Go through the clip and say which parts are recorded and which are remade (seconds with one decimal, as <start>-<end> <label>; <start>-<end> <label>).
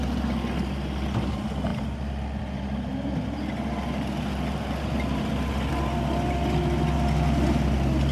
0.0-8.1 recorded